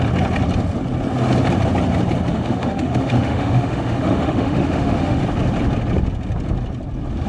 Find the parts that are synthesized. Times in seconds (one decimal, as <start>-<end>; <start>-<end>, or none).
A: 2.3-5.2